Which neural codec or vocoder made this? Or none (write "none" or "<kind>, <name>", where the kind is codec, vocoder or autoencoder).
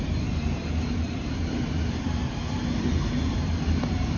vocoder, BigVGAN v2